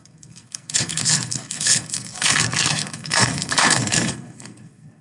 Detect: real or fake fake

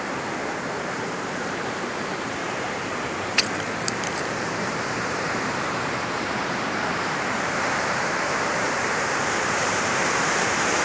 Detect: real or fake fake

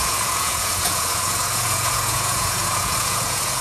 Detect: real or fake fake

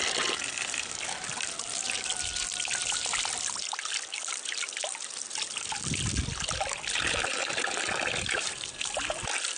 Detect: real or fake real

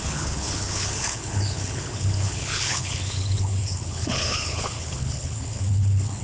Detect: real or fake fake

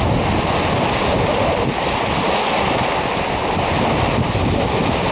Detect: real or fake real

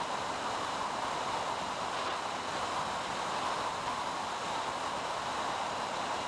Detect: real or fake real